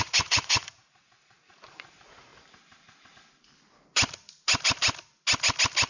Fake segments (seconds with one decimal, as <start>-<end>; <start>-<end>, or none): 0.0-2.3